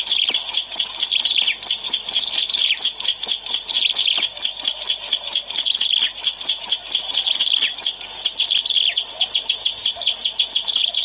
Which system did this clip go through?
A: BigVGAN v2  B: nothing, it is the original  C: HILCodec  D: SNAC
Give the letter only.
B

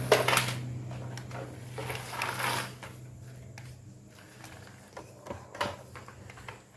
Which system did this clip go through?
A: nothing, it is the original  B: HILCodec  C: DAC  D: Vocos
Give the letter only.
A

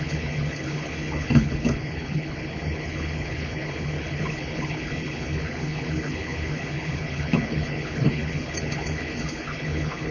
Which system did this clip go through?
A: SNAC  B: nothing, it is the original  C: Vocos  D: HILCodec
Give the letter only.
D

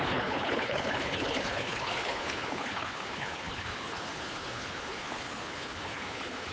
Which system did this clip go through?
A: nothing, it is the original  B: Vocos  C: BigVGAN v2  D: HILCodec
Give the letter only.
D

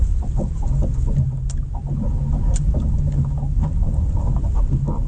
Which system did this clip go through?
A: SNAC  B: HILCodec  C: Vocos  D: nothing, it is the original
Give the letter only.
D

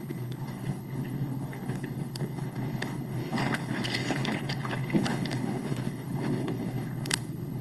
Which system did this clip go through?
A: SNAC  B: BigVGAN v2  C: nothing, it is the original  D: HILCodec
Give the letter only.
D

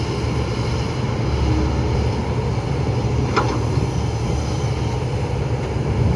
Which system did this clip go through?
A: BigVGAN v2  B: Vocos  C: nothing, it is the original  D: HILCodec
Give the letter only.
C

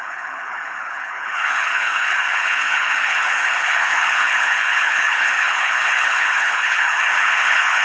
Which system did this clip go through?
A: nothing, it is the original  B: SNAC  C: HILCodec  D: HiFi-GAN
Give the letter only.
C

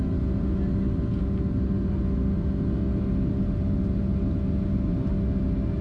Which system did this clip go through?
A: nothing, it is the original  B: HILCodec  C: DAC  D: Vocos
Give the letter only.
A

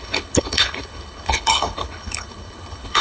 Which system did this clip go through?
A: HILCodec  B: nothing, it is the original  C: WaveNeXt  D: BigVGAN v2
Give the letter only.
A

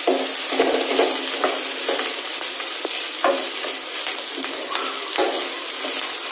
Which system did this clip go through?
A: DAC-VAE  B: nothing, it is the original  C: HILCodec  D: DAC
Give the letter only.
B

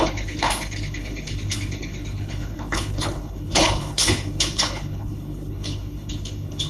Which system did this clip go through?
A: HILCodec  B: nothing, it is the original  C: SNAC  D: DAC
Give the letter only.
A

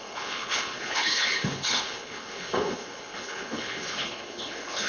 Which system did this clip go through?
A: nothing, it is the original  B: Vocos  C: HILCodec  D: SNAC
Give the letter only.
C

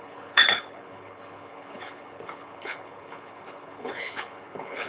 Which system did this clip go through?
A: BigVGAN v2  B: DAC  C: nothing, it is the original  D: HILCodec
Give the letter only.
D